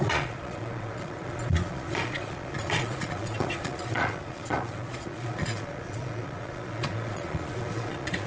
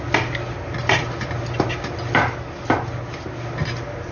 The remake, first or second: first